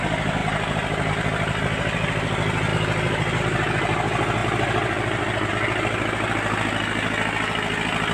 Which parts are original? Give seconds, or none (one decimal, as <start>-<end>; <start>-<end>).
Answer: 0.0-4.4; 5.5-8.1